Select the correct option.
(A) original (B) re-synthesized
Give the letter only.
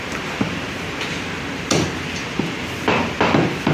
A